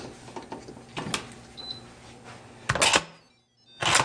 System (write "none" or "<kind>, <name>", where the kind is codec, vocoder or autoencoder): none